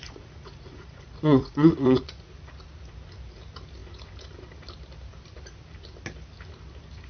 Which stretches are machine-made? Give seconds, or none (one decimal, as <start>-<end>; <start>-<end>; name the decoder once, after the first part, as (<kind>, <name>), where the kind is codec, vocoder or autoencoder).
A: 0.0-2.3 (vocoder, Vocos)